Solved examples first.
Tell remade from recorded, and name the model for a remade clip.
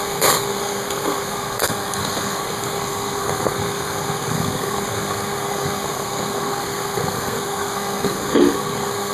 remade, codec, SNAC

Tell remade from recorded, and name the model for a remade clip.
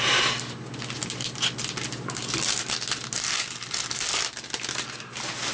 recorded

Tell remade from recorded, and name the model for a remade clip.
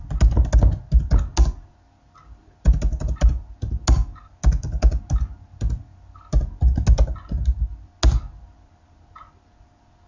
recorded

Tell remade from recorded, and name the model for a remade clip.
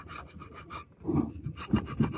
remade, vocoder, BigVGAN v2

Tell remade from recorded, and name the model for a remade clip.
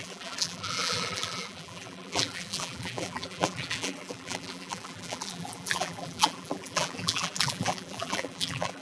remade, vocoder, BigVGAN v2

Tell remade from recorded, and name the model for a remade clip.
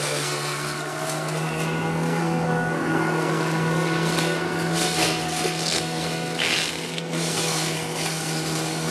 remade, codec, SNAC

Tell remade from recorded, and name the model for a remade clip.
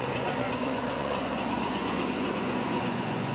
remade, vocoder, Vocos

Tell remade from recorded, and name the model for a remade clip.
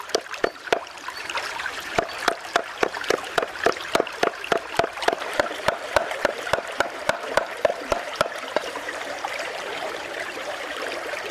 remade, vocoder, BigVGAN v2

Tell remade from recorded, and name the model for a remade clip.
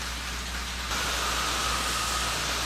recorded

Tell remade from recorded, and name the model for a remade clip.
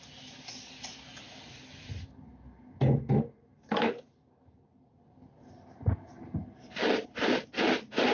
recorded